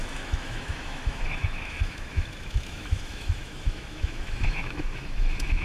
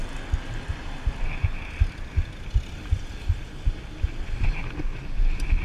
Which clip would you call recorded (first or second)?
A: second